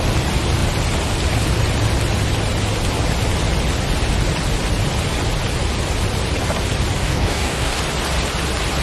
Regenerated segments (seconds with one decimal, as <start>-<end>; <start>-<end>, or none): 7.0-7.8